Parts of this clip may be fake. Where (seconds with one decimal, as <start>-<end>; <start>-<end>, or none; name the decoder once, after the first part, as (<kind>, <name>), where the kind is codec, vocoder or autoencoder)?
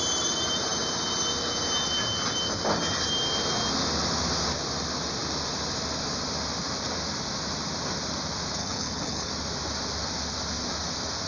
8.6-9.3 (codec, HILCodec)